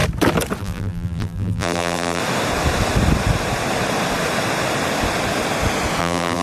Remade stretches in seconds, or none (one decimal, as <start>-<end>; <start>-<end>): 0.6-2.2; 6.0-6.4